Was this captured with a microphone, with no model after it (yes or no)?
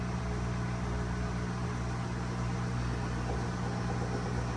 yes